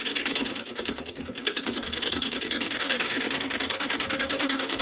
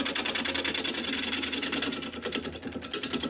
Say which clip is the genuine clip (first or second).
second